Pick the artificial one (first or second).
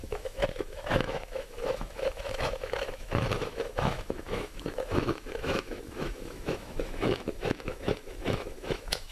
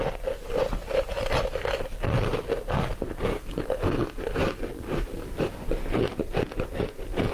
first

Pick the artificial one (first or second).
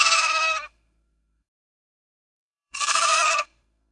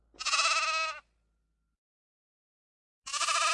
first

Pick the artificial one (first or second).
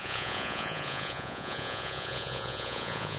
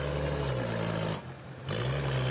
first